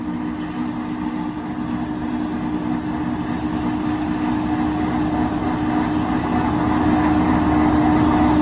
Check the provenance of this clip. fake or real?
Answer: real